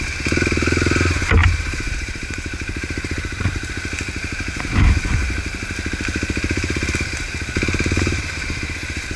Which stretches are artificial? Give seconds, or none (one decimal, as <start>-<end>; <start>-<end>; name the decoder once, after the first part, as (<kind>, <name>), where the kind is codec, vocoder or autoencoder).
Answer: 1.4-3.7 (vocoder, BigVGAN v2)